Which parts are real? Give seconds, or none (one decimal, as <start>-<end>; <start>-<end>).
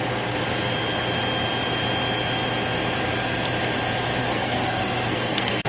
0.0-4.2